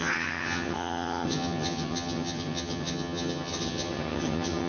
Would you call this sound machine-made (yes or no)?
yes